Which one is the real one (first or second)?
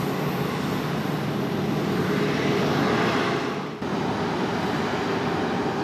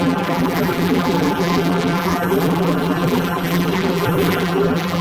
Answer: first